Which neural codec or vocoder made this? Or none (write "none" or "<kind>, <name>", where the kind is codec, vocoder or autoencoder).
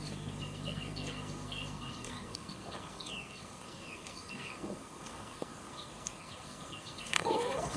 codec, SNAC